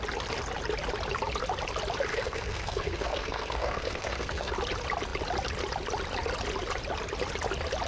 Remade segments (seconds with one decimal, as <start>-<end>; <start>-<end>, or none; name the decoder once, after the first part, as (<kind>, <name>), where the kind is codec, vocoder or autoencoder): 2.1-4.5 (codec, SNAC)